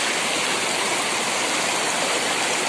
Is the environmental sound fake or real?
real